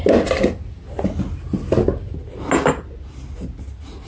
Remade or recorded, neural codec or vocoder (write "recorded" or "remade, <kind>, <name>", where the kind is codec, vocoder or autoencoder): recorded